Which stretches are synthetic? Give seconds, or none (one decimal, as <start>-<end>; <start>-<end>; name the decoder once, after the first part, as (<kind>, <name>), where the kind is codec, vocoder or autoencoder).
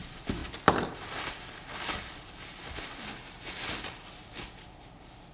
none